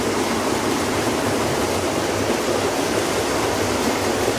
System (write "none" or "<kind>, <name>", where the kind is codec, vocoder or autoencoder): none